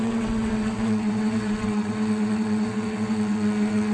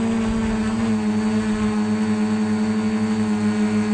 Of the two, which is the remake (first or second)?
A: first